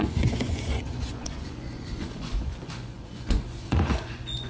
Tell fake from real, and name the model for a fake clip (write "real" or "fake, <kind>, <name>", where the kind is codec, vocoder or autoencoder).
fake, vocoder, Vocos